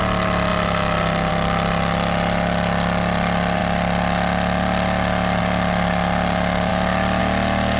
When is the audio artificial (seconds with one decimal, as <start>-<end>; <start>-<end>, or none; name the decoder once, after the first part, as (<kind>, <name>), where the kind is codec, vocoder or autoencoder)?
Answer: none